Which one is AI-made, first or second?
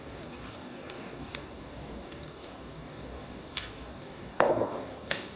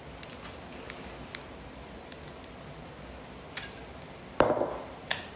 first